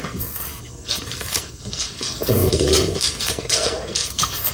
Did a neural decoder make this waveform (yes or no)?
yes